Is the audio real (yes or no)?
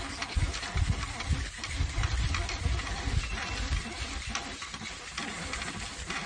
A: yes